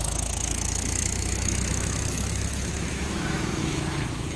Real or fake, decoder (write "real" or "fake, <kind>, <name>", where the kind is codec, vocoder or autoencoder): fake, autoencoder, DAC-VAE